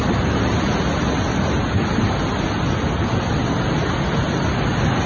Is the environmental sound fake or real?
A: real